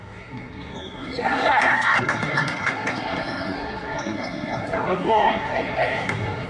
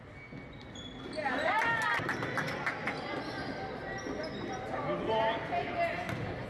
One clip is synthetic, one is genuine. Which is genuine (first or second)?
second